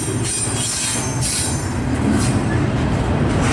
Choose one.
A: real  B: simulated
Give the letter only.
A